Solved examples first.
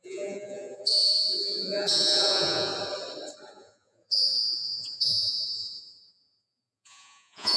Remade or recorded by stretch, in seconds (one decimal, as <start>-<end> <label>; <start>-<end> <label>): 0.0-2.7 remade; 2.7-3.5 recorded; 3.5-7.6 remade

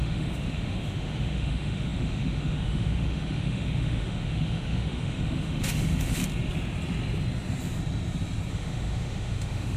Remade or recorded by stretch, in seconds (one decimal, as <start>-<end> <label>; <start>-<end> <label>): 0.0-6.2 remade; 6.2-8.5 recorded; 8.5-9.8 remade

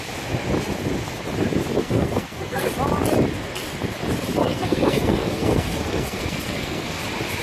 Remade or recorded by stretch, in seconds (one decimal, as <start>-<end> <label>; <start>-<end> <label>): 0.0-1.8 recorded; 1.8-2.7 remade; 2.7-4.4 recorded; 4.4-7.0 remade; 7.0-7.4 recorded